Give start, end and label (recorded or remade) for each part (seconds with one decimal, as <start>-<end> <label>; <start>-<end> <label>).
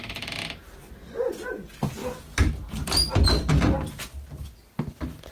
0.0-2.0 recorded; 2.0-3.6 remade; 3.6-5.3 recorded